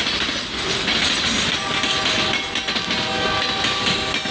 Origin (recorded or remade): recorded